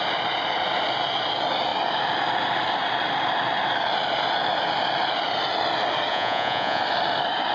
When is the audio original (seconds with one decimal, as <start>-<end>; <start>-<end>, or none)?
0.0-6.1; 6.8-7.5